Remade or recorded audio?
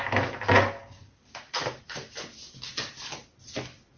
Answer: recorded